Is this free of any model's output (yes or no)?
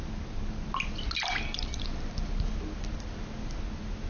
yes